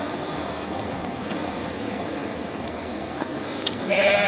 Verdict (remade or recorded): remade